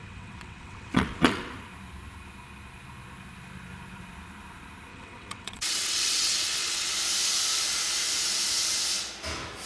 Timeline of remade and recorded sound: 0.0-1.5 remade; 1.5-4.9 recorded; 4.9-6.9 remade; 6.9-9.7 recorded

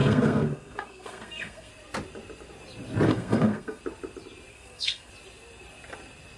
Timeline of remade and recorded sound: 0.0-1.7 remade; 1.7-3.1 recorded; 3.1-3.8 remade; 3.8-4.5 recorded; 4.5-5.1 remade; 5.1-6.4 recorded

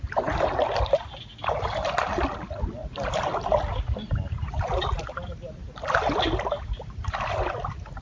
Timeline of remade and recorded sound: 0.0-8.0 recorded

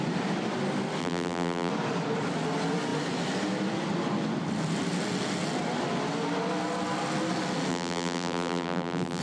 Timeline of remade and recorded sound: 0.0-1.0 recorded; 1.0-1.7 remade; 1.7-7.7 recorded; 7.7-9.2 remade

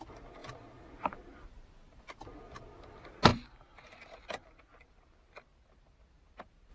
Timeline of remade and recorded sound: 0.0-0.4 recorded; 0.4-2.0 remade; 2.0-3.3 recorded; 3.3-6.7 remade

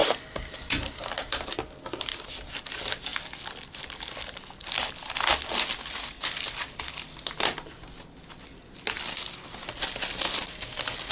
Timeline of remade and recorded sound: 0.0-1.1 remade; 1.1-2.1 recorded; 2.1-2.7 remade; 2.7-3.1 recorded; 3.1-5.0 remade; 5.0-11.1 recorded

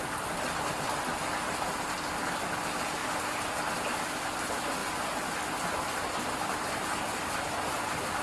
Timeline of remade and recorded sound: 0.0-8.2 recorded

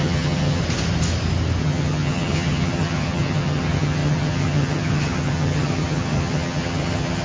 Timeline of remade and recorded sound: 0.0-0.6 remade; 0.6-1.6 recorded; 1.6-7.2 remade